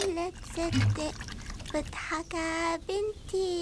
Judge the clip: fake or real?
real